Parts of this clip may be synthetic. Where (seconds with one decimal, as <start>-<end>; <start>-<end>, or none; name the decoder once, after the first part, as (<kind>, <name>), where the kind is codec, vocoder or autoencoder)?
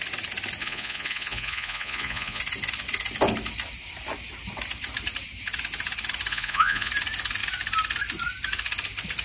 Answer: 0.6-2.4 (vocoder, Vocos); 6.3-6.9